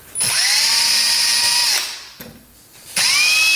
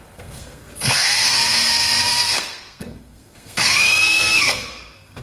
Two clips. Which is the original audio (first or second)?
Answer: first